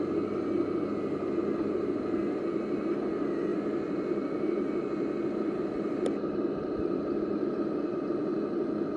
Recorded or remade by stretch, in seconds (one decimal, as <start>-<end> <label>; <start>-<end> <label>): 0.0-9.0 recorded